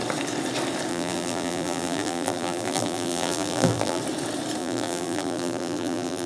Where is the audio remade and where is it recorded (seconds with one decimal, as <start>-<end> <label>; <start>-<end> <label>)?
0.0-0.9 recorded; 0.9-4.0 remade; 4.0-4.6 recorded; 4.6-6.3 remade